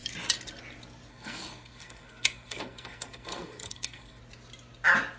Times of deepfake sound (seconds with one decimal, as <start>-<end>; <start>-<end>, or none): 1.1-4.2